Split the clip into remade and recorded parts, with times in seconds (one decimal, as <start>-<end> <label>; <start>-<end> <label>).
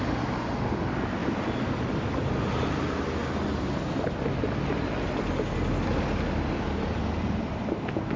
0.0-8.2 recorded